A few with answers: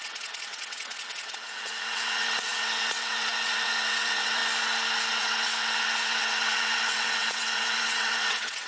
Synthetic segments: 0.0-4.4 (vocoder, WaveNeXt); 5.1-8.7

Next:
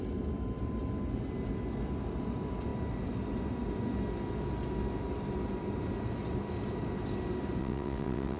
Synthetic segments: 7.6-8.4 (vocoder, WaveNeXt)

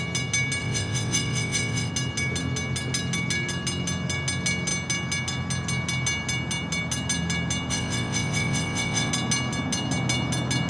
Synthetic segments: 0.6-1.9 (vocoder, WaveNeXt); 7.7-9.1